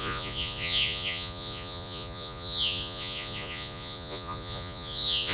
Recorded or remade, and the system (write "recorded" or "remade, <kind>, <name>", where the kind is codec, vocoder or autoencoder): remade, vocoder, Vocos